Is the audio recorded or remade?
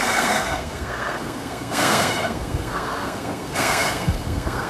remade